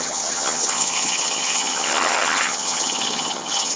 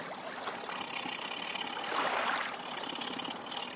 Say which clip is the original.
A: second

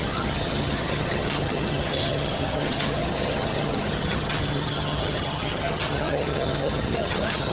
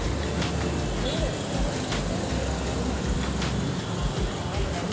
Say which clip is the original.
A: second